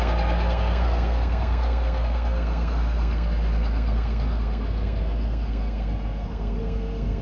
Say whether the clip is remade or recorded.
remade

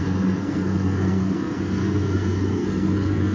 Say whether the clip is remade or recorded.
remade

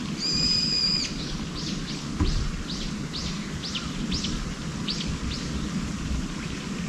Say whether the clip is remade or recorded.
recorded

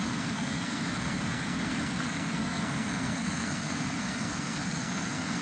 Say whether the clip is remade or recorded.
remade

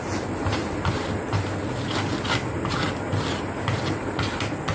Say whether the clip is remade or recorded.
recorded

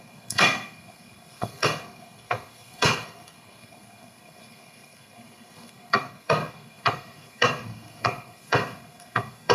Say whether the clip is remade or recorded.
remade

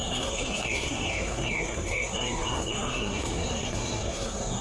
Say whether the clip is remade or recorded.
remade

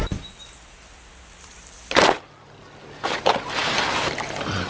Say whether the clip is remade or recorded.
recorded